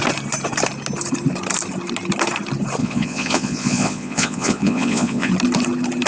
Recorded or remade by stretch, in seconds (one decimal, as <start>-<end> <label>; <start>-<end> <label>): 0.0-2.8 recorded; 2.8-5.3 remade; 5.3-6.1 recorded